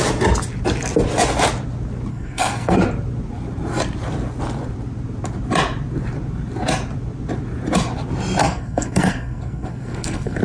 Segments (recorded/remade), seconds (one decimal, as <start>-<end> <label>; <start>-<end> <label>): 0.0-2.1 recorded; 2.1-2.8 remade; 2.8-8.4 recorded; 8.4-10.4 remade